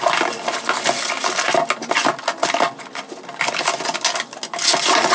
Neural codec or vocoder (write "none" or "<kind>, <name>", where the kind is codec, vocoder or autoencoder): none